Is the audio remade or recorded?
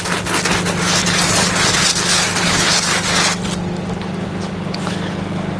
recorded